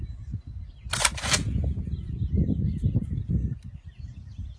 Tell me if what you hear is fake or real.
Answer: real